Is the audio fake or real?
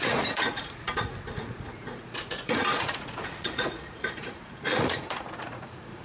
fake